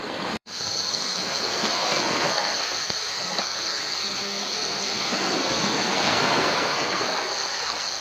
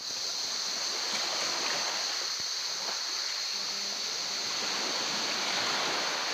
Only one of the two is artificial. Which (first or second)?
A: first